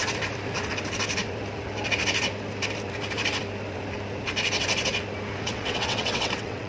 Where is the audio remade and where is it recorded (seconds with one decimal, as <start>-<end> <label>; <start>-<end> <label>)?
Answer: 0.0-5.5 recorded; 5.5-6.7 remade